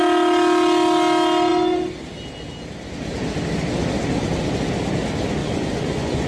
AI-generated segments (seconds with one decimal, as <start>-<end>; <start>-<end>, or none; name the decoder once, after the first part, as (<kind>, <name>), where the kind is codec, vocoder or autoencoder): 5.4-6.3 (vocoder, Vocos)